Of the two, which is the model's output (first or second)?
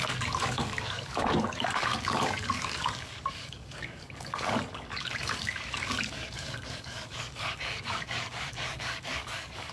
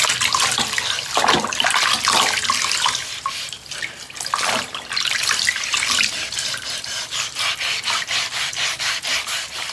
first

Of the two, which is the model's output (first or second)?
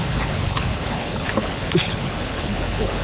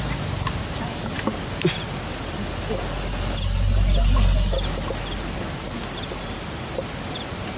first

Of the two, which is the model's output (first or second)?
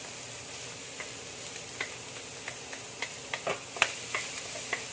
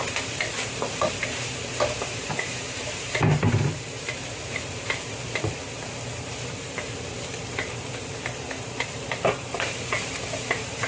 second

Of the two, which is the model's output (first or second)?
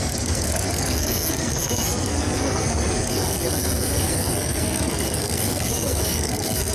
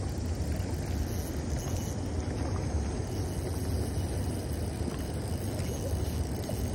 first